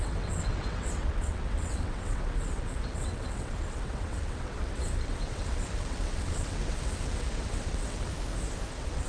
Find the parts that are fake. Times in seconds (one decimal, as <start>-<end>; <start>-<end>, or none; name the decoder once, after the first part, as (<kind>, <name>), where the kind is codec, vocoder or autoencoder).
0.0-8.1 (vocoder, WaveNeXt); 8.7-9.1

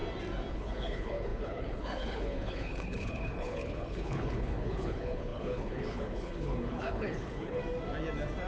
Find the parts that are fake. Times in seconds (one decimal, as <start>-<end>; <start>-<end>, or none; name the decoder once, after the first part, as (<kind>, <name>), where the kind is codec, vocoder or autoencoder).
0.5-7.6 (codec, HILCodec)

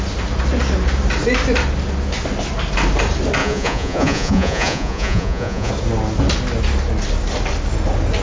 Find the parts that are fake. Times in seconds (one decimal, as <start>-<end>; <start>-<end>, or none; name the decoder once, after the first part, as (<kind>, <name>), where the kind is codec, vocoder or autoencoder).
3.4-5.7 (vocoder, Vocos)

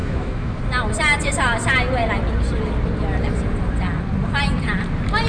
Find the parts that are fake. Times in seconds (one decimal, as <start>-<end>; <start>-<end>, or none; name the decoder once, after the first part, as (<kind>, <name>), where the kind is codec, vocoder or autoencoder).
0.0-0.6 (autoencoder, DAC-VAE)

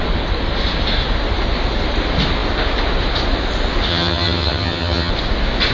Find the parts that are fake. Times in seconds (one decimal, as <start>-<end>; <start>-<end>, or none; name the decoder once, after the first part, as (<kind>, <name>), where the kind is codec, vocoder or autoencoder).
3.9-5.1 (vocoder, HiFi-GAN)

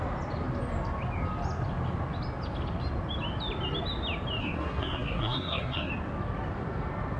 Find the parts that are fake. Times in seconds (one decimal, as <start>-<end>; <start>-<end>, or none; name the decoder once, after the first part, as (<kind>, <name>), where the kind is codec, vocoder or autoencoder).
4.4-5.9 (codec, SNAC)